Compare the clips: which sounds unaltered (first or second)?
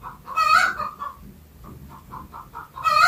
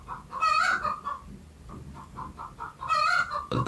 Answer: first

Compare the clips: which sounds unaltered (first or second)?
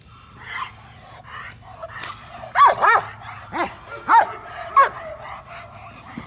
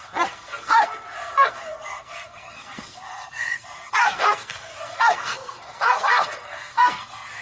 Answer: first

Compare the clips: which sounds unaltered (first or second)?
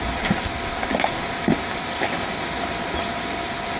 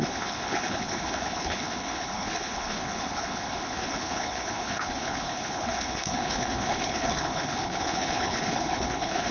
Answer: first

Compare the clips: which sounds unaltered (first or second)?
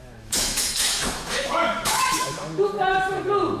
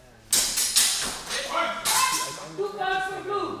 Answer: second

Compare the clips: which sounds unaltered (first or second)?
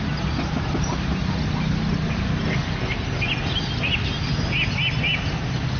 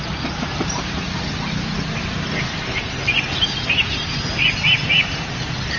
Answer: first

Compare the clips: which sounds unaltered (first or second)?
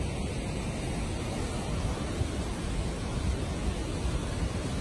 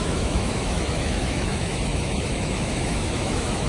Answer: first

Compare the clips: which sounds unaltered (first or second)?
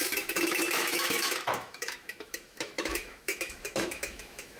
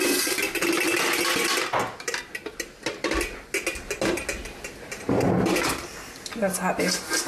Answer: second